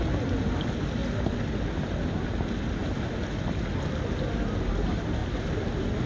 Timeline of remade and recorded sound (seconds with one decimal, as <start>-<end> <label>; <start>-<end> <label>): 0.0-6.1 recorded